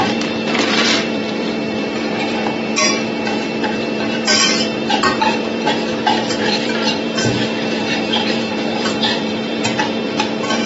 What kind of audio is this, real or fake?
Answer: fake